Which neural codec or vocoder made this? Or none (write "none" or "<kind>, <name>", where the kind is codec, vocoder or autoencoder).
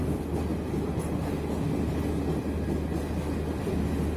none